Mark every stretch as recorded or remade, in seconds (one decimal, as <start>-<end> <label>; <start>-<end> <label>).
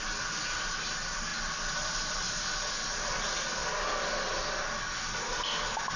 0.0-6.0 recorded